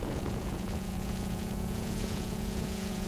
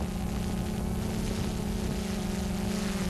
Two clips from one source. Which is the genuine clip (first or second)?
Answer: second